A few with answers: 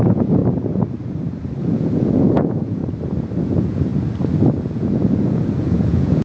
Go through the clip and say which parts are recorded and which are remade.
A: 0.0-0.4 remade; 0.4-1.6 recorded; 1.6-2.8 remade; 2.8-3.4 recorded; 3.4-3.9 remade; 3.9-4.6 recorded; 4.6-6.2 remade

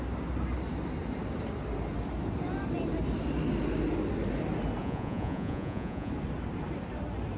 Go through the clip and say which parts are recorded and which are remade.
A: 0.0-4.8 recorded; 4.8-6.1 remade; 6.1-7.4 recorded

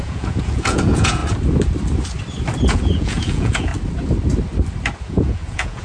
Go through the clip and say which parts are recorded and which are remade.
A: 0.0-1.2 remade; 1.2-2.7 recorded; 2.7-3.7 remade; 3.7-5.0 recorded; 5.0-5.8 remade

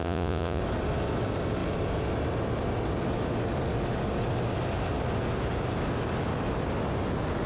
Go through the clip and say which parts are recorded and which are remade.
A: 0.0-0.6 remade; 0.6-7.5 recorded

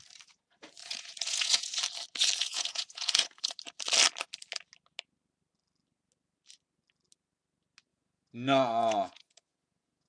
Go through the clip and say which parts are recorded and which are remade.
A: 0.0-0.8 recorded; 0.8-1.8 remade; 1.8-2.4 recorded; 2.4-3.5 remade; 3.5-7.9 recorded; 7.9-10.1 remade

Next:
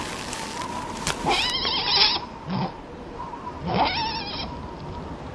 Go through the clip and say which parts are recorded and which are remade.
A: 0.0-5.3 recorded